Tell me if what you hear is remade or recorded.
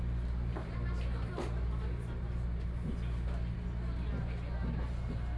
recorded